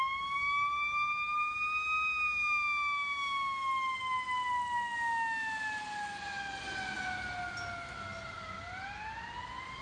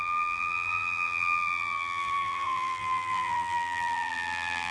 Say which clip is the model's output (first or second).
second